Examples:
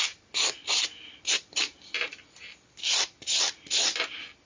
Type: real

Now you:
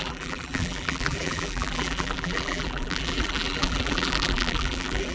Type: fake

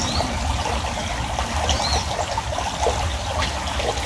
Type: real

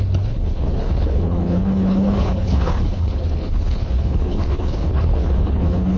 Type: fake